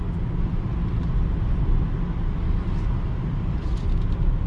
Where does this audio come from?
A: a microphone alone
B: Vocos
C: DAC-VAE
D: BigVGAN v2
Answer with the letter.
A